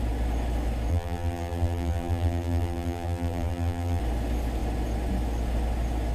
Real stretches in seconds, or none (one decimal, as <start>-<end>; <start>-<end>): 0.0-0.9; 4.0-6.1